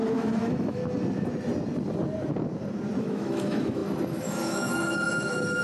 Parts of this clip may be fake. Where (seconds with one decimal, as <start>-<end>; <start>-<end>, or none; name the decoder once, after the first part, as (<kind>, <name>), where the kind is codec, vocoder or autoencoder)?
0.0-0.8 (autoencoder, DAC-VAE); 3.0-5.6